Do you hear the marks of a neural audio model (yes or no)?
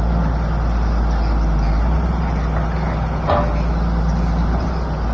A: no